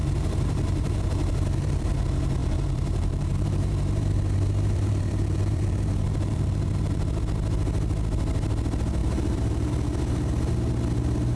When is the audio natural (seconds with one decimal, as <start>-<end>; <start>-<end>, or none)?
1.9-2.4; 7.2-9.0; 9.7-11.4

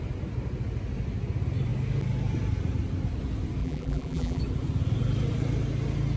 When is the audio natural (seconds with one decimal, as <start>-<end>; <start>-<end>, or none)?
0.0-3.6; 4.4-6.2

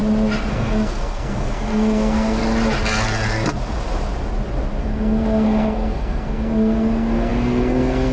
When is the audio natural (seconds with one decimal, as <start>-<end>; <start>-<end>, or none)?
0.0-0.5; 2.4-4.8

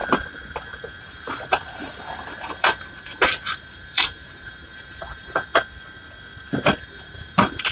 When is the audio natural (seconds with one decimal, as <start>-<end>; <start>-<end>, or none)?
0.0-1.0; 5.5-6.8

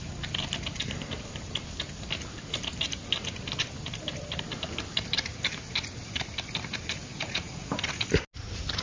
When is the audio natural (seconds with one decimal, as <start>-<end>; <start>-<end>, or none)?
0.0-7.1; 7.7-8.8